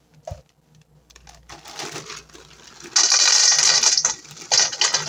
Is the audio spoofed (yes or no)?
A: no